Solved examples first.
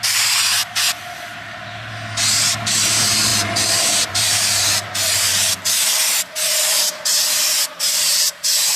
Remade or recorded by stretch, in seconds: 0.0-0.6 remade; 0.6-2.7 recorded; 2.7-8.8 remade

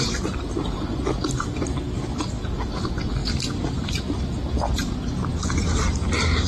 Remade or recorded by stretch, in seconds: 0.0-5.3 recorded; 5.3-6.0 remade; 6.0-6.5 recorded

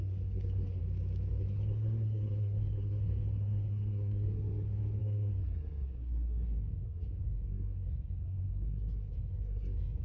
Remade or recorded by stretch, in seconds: 0.0-0.8 remade; 0.8-1.3 recorded; 1.3-10.0 remade

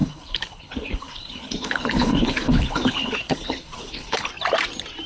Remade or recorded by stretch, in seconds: 0.0-4.3 remade; 4.3-5.1 recorded

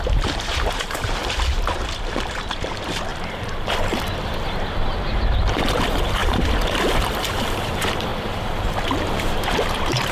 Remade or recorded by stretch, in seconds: 0.0-3.1 remade; 3.1-5.2 recorded; 5.2-6.2 remade; 6.2-7.4 recorded; 7.4-10.1 remade

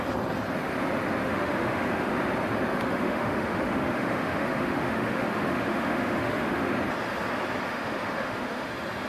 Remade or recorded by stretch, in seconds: 0.0-1.2 recorded; 1.2-2.1 remade; 2.1-2.7 recorded; 2.7-6.7 remade; 6.7-7.7 recorded; 7.7-8.7 remade; 8.7-9.1 recorded

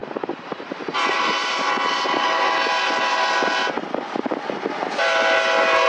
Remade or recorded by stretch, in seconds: 0.0-1.7 remade; 1.7-5.9 recorded